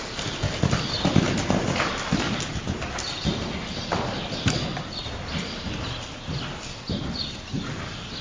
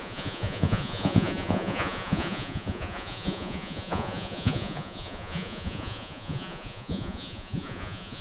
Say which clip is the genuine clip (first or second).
first